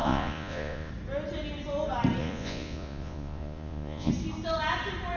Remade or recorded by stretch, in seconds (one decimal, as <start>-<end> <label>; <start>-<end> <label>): 0.0-0.9 remade; 0.9-2.2 recorded; 2.2-4.1 remade; 4.1-5.2 recorded